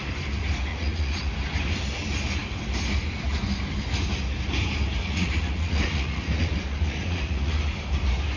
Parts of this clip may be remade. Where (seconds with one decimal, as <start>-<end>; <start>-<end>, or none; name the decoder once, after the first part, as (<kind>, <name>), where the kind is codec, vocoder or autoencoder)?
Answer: 0.7-1.3 (vocoder, Vocos); 5.0-7.6

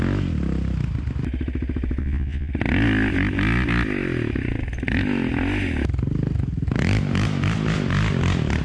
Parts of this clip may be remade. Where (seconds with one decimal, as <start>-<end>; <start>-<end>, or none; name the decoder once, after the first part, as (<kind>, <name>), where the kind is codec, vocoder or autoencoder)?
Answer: 2.0-2.5 (vocoder, Vocos)

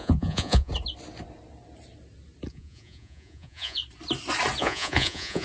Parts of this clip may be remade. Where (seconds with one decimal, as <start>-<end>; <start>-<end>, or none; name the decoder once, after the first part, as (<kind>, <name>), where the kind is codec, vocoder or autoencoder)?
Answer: 0.0-0.7 (vocoder, Vocos); 2.5-3.8; 4.6-5.4

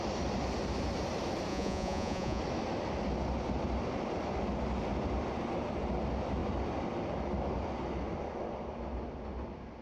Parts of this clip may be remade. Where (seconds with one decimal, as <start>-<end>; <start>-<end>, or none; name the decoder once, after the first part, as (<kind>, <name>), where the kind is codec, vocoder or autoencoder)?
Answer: 1.5-2.4 (vocoder, Vocos)

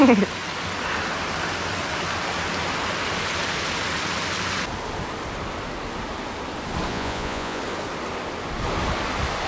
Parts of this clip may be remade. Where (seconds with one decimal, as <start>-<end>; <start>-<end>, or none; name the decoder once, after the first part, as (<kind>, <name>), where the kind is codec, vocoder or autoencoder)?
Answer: 6.9-7.6 (vocoder, Vocos)

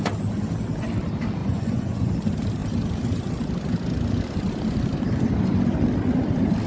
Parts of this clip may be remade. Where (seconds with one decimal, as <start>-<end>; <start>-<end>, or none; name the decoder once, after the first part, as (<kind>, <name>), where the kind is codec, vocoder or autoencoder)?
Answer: 1.4-2.1 (vocoder, Vocos)

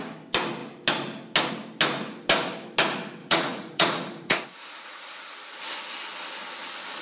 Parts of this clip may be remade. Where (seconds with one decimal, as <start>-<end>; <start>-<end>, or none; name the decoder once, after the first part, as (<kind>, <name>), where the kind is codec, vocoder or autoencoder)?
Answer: 3.2-5.2 (vocoder, Vocos)

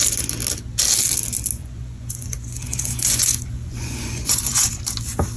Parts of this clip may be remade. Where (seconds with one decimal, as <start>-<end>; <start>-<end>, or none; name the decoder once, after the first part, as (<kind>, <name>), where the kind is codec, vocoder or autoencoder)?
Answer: 1.6-4.8 (vocoder, Vocos)